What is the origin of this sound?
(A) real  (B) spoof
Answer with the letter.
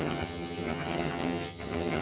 B